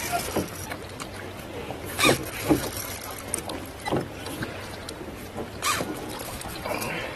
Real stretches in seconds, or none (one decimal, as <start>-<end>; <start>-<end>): 0.0-7.2